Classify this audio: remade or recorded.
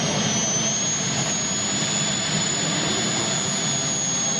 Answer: recorded